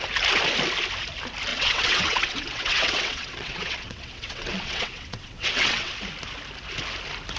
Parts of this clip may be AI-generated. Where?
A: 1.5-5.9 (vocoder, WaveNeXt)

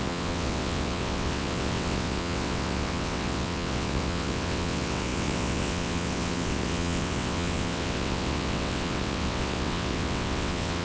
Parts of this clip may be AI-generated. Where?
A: 0.0-10.8 (vocoder, WaveNeXt)

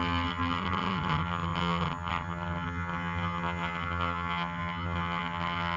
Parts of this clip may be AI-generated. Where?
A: 0.0-5.8 (vocoder, HiFi-GAN)

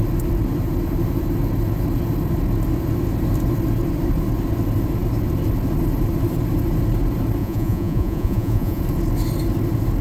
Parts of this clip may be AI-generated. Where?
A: 7.4-8.8 (vocoder, Vocos)